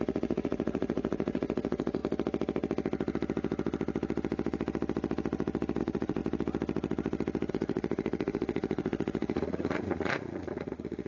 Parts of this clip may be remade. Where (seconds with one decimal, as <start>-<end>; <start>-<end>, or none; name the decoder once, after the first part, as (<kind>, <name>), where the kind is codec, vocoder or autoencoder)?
0.0-2.0 (vocoder, Vocos); 5.8-6.2; 7.5-11.1